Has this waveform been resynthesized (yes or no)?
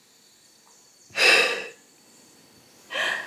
no